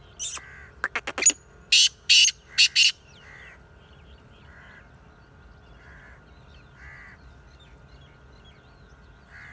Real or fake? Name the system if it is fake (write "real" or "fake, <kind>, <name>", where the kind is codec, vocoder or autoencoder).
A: real